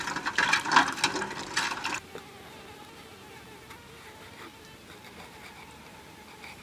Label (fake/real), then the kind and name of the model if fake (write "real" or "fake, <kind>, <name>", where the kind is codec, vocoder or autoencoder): real